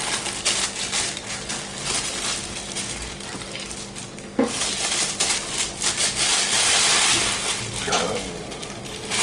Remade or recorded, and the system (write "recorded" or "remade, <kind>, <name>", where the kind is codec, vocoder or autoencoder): recorded